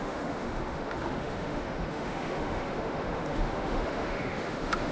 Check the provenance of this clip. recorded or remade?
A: remade